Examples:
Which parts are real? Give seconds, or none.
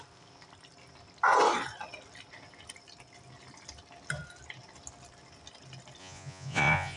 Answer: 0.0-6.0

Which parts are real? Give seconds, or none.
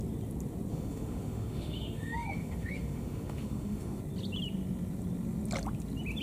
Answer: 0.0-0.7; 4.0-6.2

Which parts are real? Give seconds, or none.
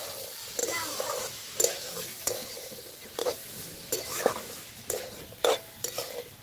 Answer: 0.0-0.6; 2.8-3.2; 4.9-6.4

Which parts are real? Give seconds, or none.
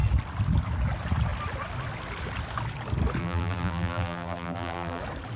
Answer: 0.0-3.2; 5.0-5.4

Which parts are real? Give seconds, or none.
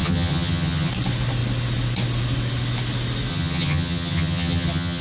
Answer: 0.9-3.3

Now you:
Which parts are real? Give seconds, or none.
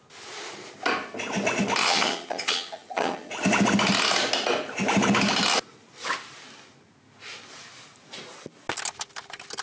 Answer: 0.0-1.8; 3.3-9.6